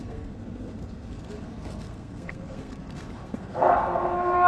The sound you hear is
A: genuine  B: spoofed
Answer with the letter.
B